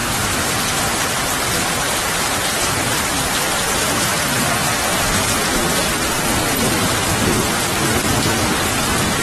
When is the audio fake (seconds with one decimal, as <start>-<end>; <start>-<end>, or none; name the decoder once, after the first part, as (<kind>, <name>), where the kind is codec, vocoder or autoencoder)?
0.0-5.8 (vocoder, BigVGAN v2)